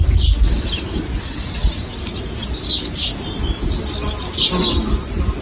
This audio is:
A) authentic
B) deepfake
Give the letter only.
A